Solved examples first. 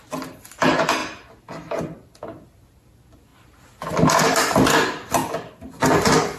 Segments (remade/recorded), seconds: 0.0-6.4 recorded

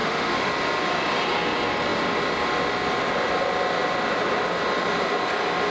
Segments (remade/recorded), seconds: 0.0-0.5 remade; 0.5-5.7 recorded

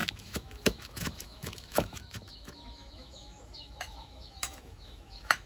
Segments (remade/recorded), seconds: 0.0-5.5 remade